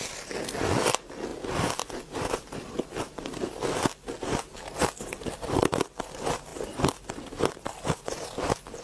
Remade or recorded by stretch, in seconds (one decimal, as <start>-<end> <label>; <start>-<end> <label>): 0.0-1.3 recorded; 1.3-2.3 remade; 2.3-8.8 recorded